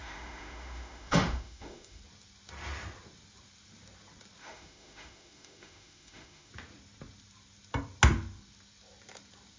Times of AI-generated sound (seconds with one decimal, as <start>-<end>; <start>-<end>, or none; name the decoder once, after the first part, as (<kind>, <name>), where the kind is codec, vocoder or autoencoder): 0.0-2.0 (autoencoder, DAC-VAE); 4.4-6.5